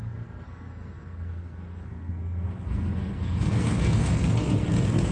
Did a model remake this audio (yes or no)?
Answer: yes